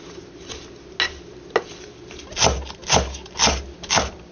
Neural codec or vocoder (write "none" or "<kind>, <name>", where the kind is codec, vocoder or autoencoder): none